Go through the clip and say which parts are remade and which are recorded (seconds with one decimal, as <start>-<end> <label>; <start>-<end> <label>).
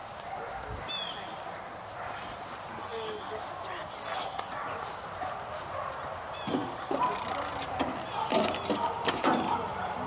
0.0-10.1 recorded